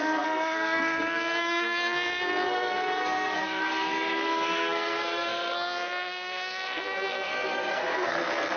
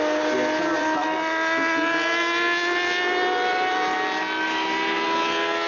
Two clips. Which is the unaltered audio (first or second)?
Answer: second